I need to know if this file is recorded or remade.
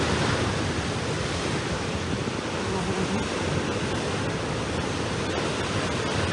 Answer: recorded